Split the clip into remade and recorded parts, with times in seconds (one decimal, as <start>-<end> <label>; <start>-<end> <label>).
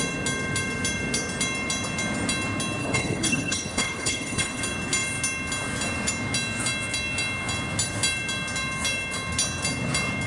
0.0-2.8 recorded; 2.8-4.6 remade; 4.6-10.3 recorded